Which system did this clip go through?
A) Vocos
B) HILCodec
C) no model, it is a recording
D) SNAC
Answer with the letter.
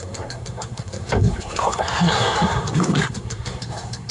D